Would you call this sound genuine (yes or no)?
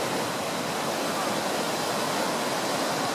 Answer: yes